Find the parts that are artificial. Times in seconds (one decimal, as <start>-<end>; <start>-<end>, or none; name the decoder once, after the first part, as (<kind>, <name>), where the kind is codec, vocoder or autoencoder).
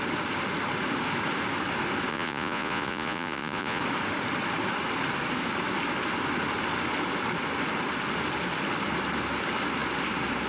2.1-3.8 (vocoder, Vocos)